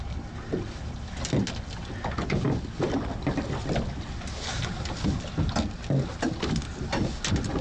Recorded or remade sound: recorded